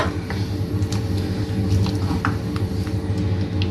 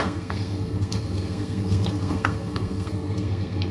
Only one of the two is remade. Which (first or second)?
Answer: second